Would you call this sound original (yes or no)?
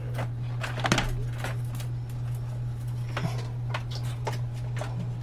yes